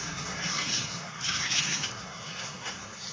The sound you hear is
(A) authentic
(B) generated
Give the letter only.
B